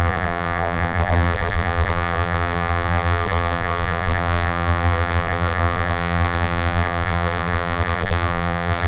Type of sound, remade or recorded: remade